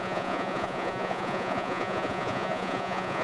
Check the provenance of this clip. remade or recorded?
remade